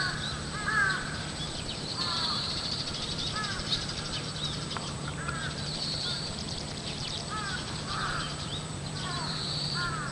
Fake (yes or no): yes